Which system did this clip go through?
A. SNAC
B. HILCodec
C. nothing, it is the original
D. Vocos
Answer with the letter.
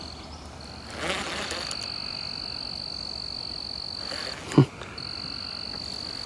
C